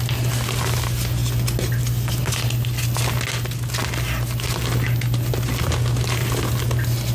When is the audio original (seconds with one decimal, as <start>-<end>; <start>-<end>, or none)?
0.0-7.1